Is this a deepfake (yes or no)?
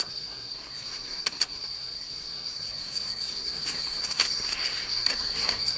yes